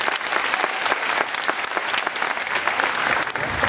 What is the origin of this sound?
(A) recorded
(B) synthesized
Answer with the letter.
A